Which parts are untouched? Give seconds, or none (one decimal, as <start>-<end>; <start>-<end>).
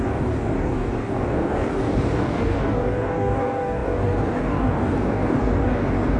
none